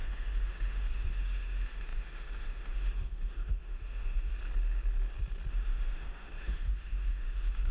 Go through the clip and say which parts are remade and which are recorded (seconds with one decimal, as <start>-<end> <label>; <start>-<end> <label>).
0.0-4.3 remade; 4.3-5.5 recorded; 5.5-7.7 remade